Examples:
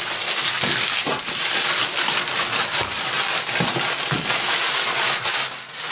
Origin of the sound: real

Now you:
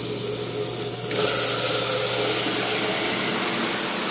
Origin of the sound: real